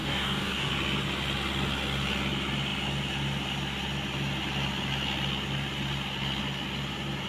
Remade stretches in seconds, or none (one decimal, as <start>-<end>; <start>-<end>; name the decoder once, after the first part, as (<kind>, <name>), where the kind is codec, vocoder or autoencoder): 0.0-0.7 (codec, DAC)

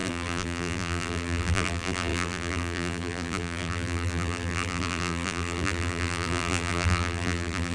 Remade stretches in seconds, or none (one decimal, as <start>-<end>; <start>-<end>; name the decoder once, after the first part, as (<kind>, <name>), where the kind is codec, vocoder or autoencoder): 0.0-7.7 (vocoder, BigVGAN v2)